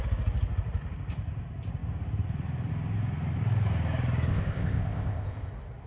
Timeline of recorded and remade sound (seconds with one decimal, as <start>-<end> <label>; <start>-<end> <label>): 0.0-4.3 recorded; 4.3-5.5 remade; 5.5-5.9 recorded